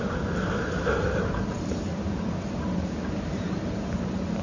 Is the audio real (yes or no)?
no